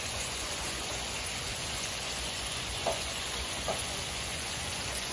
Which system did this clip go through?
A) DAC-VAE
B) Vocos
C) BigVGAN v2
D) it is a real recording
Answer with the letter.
B